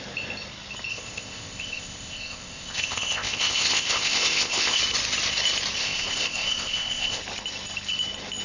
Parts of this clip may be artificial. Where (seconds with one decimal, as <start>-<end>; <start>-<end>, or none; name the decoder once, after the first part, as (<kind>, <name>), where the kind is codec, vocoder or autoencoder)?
0.9-4.8 (codec, ZipCodec); 5.8-7.2